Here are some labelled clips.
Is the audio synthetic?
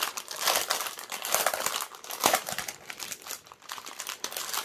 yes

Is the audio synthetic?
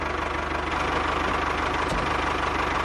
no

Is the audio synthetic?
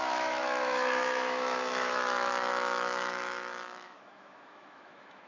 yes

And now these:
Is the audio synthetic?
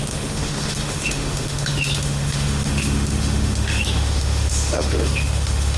yes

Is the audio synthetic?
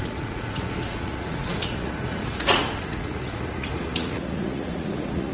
yes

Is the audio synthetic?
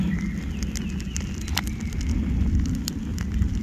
no